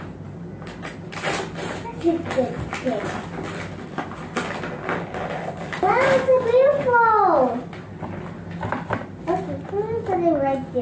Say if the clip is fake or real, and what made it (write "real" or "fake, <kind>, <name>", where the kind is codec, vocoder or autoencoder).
real